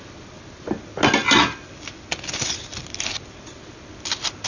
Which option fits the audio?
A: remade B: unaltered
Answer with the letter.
B